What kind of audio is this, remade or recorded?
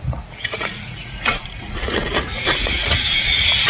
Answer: remade